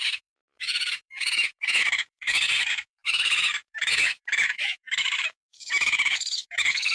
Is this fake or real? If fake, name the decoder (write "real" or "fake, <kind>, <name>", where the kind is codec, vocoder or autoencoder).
fake, autoencoder, DAC-VAE